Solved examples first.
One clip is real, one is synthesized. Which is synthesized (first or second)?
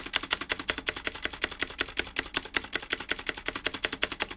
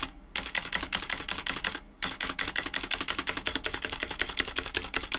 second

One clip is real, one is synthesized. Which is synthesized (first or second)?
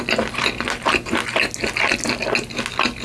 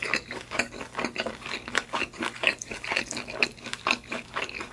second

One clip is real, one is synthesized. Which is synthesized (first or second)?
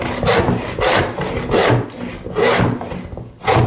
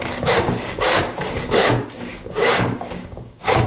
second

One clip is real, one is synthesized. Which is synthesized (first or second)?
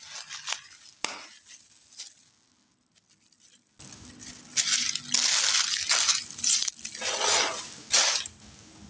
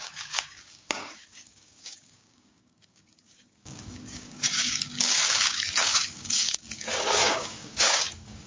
second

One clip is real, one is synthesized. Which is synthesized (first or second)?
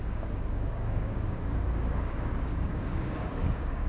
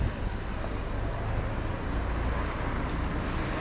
first